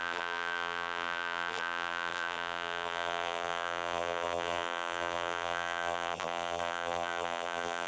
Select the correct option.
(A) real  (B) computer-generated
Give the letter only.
B